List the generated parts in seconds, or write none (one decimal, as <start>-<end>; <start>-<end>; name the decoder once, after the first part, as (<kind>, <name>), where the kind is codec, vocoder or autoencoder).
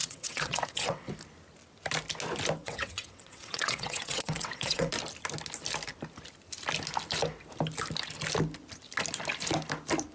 0.0-1.1 (vocoder, WaveNeXt); 2.6-4.9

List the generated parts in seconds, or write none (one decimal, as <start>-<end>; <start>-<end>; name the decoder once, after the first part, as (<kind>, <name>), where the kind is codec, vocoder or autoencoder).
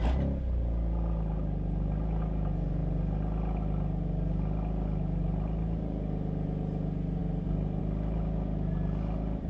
none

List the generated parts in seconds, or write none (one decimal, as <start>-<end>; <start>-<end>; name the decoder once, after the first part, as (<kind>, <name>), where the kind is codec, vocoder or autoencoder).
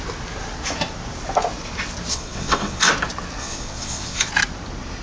2.1-2.9 (vocoder, WaveNeXt); 3.4-4.3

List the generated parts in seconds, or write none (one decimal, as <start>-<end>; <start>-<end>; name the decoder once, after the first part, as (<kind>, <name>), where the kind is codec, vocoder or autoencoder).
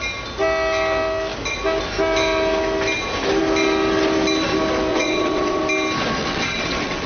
4.9-5.6 (vocoder, WaveNeXt); 6.2-7.1